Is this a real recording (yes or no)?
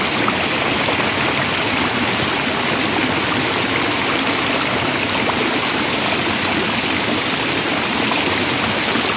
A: yes